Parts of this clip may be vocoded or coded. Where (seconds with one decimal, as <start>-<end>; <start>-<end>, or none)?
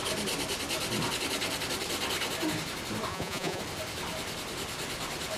3.1-3.6